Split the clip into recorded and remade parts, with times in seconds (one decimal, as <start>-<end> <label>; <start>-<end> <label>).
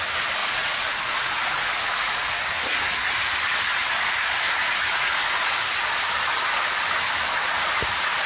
0.0-0.4 recorded; 0.4-2.4 remade; 2.4-4.7 recorded; 4.7-5.5 remade; 5.5-8.3 recorded